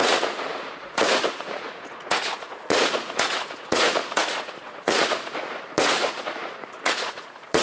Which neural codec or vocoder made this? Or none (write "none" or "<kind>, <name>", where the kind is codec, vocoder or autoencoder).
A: vocoder, Vocos